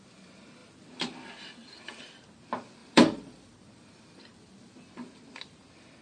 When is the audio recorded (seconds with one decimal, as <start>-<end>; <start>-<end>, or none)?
0.0-2.8; 4.2-6.0